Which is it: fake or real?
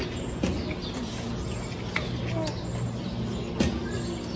real